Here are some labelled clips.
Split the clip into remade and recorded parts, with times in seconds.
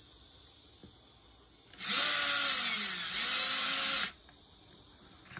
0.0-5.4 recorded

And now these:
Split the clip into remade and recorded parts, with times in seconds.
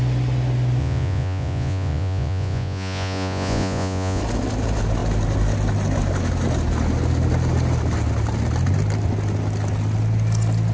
0.0-0.8 recorded; 0.8-4.2 remade; 4.2-10.7 recorded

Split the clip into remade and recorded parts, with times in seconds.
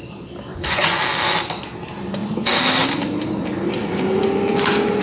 0.0-0.5 recorded; 0.5-1.0 remade; 1.0-5.0 recorded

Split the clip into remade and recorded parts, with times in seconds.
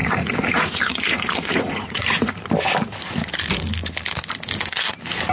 0.0-2.4 remade; 2.4-5.3 recorded